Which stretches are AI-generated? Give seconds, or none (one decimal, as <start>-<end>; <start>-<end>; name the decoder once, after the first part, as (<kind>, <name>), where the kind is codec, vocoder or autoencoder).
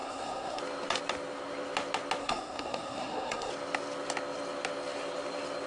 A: 0.0-0.6 (codec, SNAC); 2.2-3.5